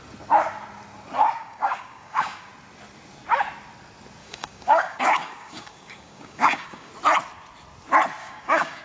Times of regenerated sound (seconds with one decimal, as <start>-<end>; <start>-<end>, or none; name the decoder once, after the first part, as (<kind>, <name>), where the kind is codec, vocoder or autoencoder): 1.4-2.5 (codec, DAC); 4.2-6.9; 8.2-8.8